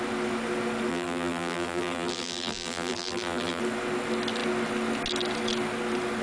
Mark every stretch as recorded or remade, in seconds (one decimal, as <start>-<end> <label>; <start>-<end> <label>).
0.0-0.9 recorded; 0.9-3.6 remade; 3.6-6.2 recorded